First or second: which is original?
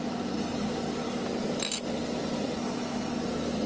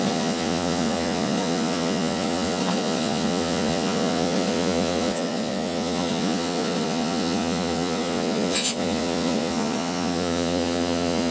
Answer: first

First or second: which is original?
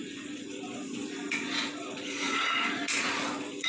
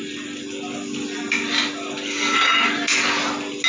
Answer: second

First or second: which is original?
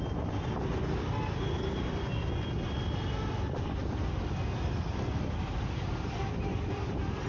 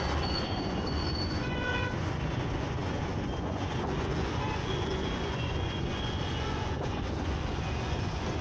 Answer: first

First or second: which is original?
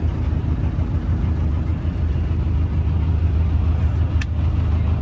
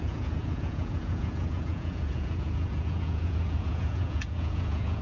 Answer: first